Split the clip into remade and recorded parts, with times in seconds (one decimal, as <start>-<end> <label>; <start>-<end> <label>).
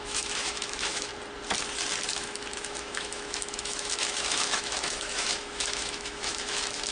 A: 0.0-1.1 remade; 1.1-2.1 recorded; 2.1-6.9 remade